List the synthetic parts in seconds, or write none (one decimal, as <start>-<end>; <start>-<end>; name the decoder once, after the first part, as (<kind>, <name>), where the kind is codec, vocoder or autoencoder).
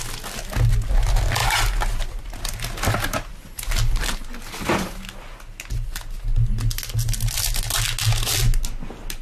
none